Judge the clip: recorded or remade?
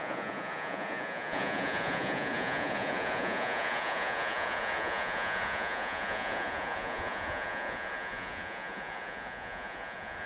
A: remade